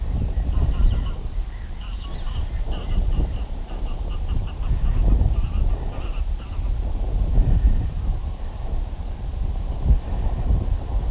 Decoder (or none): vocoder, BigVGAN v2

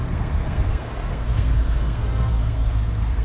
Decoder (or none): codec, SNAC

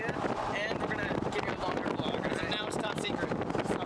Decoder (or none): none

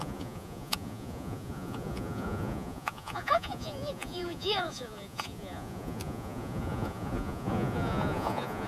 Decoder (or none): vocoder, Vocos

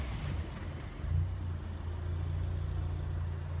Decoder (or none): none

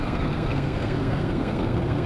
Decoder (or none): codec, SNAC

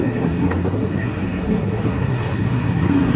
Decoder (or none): codec, SNAC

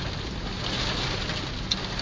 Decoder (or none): none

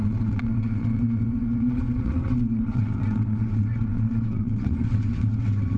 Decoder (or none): vocoder, WaveNeXt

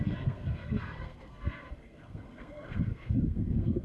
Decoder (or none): codec, SNAC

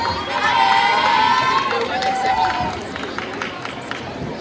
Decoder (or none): vocoder, BigVGAN v2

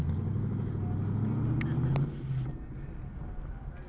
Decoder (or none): none